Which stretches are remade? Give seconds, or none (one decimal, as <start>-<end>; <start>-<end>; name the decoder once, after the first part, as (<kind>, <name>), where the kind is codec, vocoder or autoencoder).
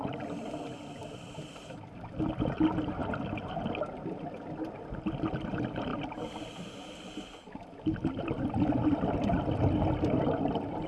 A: none